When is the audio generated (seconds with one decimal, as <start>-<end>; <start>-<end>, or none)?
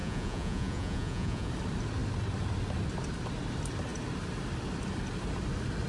0.0-1.5